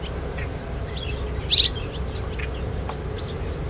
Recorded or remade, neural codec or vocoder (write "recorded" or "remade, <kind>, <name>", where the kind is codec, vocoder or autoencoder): recorded